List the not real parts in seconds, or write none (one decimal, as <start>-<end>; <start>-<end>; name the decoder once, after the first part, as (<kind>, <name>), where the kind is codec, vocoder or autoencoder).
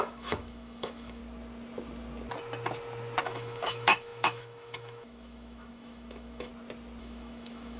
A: 0.0-1.2 (autoencoder, DAC-VAE); 3.2-6.5; 7.0-7.8